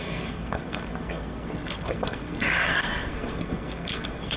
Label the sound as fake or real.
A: fake